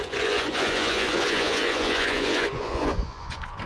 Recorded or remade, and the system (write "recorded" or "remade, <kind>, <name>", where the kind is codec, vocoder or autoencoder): remade, vocoder, Vocos